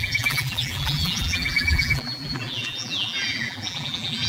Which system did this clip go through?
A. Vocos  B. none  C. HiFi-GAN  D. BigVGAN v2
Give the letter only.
D